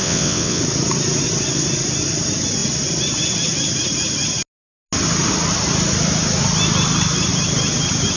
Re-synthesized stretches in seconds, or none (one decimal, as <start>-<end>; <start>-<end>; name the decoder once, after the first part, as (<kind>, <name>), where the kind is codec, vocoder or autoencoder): 0.0-0.6 (vocoder, WaveNeXt)